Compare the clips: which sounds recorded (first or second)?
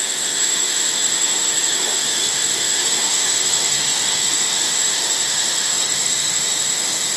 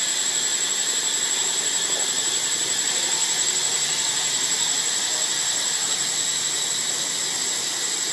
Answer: second